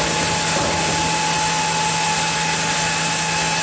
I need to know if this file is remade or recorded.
recorded